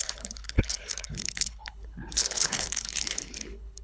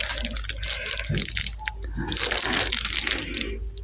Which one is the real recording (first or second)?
second